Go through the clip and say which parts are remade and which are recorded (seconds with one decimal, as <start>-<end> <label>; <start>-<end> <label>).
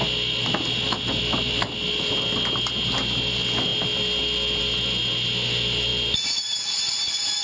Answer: 0.0-7.4 recorded